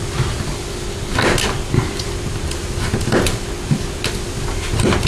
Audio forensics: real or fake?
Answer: real